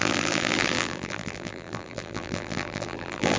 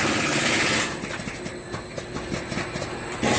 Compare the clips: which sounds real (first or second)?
second